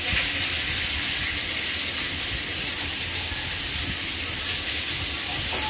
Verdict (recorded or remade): recorded